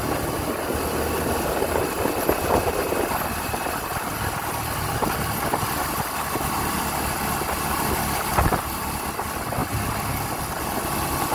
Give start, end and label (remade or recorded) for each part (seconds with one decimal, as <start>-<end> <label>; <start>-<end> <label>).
0.0-11.3 recorded